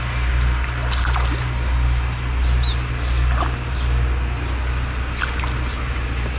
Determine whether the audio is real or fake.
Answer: real